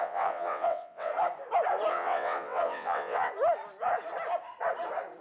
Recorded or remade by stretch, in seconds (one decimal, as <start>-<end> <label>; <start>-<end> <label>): 0.0-1.1 remade; 1.1-1.9 recorded; 1.9-3.3 remade; 3.3-5.2 recorded